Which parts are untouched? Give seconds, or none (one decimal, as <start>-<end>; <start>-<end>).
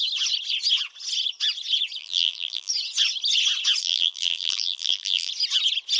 0.0-2.0; 2.7-3.8; 5.3-6.0